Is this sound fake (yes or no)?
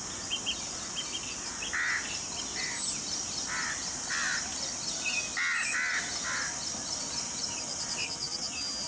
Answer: no